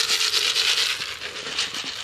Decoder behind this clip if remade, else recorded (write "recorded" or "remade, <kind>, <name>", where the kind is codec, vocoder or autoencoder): recorded